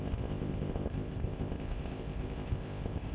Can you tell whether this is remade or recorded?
remade